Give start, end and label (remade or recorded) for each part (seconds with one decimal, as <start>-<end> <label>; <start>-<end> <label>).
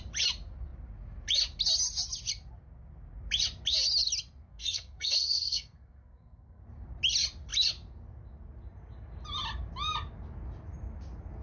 0.0-4.5 recorded; 4.5-6.6 remade; 6.6-11.4 recorded